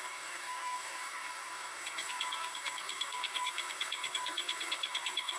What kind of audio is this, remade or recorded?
remade